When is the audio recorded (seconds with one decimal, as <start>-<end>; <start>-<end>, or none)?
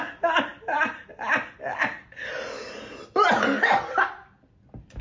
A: 0.0-5.0